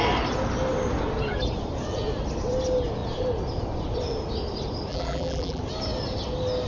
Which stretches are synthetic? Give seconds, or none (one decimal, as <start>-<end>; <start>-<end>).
4.9-5.6